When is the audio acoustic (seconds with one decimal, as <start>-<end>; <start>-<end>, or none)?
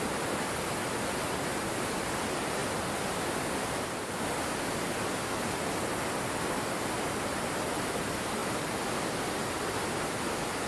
0.0-10.7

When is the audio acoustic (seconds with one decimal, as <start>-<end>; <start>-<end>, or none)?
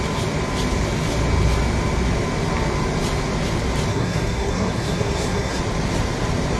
0.0-3.9; 5.6-6.6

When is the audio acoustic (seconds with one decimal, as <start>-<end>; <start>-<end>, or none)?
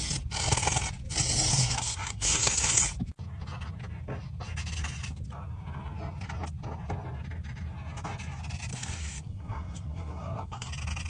0.0-1.5; 2.8-8.7; 10.7-11.1